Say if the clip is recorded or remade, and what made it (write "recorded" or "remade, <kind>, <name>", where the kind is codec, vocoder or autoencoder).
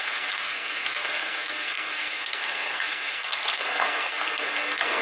remade, codec, SNAC